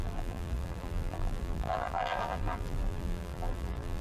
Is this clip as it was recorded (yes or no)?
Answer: no